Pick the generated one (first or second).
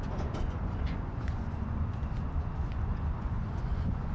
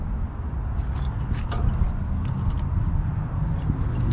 first